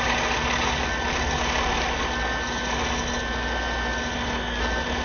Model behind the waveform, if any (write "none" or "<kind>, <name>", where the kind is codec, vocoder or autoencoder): none